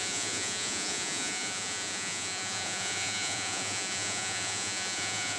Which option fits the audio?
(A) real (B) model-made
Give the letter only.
B